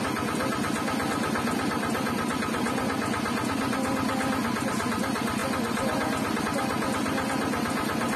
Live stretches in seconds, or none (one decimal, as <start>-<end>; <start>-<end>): 0.0-8.2